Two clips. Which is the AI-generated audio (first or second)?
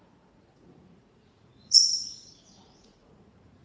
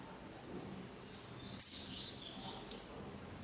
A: first